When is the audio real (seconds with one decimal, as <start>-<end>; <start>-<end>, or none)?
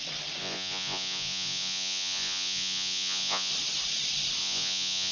0.0-0.4; 3.5-4.4